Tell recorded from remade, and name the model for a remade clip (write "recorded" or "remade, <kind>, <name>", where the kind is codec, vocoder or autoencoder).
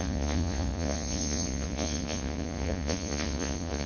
remade, vocoder, Vocos